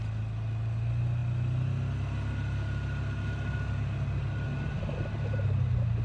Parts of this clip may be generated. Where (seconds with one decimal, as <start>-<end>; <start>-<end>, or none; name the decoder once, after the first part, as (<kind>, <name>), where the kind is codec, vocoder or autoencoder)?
none